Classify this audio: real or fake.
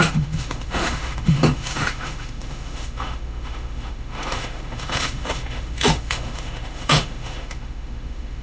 fake